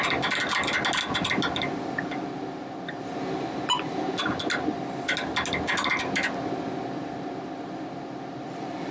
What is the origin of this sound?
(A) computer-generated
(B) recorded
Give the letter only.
B